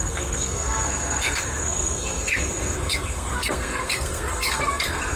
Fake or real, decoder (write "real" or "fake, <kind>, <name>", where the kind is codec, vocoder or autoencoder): fake, codec, SNAC